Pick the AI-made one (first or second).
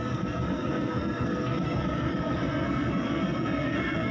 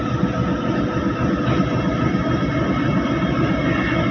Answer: first